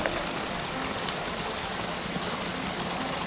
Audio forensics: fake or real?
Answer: real